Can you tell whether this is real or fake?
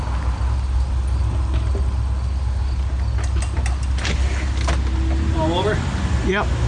real